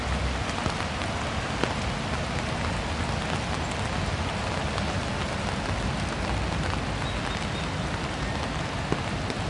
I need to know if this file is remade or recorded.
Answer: recorded